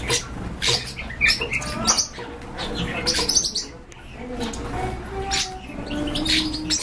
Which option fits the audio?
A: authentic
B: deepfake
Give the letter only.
A